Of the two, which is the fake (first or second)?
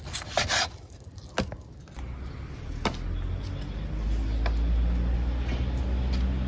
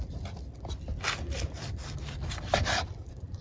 second